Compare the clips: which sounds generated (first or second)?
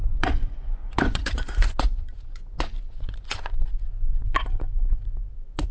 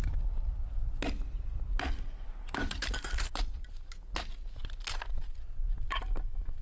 first